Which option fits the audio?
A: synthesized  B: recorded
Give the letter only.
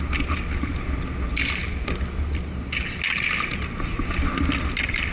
B